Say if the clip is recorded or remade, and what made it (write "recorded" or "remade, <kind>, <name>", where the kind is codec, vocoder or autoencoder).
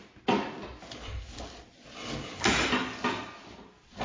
recorded